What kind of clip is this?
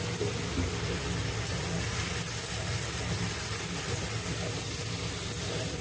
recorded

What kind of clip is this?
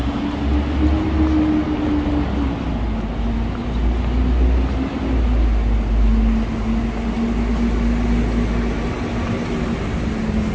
recorded